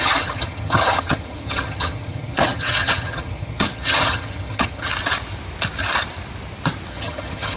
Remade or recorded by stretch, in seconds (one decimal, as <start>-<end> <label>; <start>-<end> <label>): 0.0-4.9 remade; 4.9-6.9 recorded; 6.9-7.6 remade